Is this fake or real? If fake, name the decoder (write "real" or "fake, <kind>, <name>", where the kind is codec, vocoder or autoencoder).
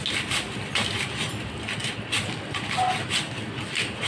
real